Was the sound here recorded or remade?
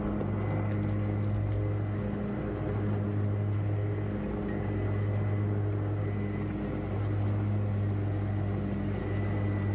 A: recorded